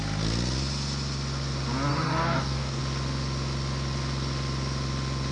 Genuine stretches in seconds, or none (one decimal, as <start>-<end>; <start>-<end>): 0.0-1.9; 2.8-5.3